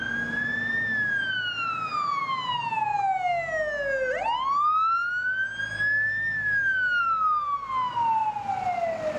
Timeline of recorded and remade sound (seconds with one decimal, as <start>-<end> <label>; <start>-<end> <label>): 0.0-9.2 recorded